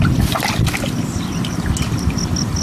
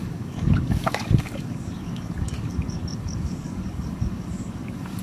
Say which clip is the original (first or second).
first